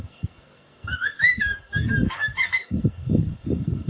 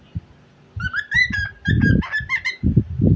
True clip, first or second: second